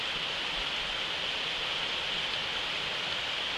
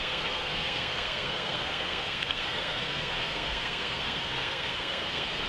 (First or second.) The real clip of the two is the first